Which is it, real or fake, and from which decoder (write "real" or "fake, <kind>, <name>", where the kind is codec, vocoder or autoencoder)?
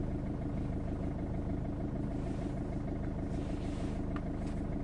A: real